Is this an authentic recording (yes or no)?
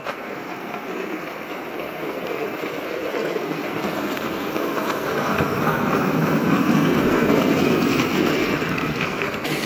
no